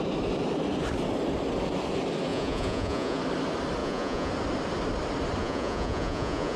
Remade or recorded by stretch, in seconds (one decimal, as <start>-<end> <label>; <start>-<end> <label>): 0.0-2.3 recorded; 2.3-3.2 remade; 3.2-3.8 recorded; 3.8-4.3 remade; 4.3-5.4 recorded; 5.4-6.6 remade